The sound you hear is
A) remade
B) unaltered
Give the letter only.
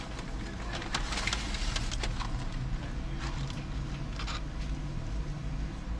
B